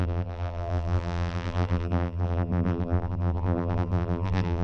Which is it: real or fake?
fake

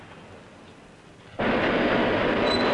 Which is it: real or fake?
real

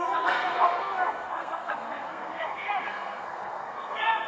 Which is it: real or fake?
fake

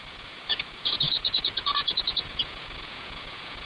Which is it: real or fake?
fake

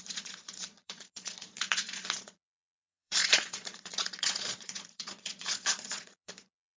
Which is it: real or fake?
fake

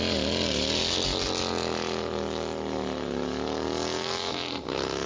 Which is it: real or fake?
real